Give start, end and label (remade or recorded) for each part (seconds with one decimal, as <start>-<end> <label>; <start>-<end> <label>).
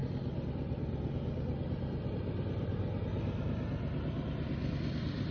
0.0-5.3 recorded